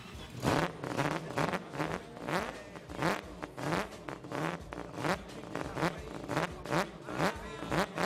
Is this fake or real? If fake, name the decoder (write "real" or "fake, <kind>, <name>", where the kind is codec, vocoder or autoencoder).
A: real